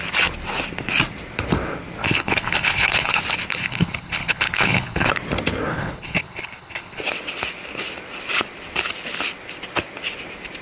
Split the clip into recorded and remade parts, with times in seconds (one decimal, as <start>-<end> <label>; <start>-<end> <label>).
0.0-2.0 recorded; 2.0-3.2 remade; 3.2-3.6 recorded; 3.6-5.1 remade; 5.1-5.7 recorded; 5.7-7.0 remade; 7.0-10.6 recorded